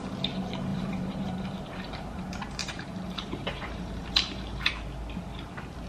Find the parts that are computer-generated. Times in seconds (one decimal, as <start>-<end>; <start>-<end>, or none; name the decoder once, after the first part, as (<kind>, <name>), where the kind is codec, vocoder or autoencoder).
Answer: 0.7-2.2 (vocoder, BigVGAN v2); 2.6-4.7